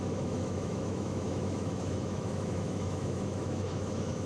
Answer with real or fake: fake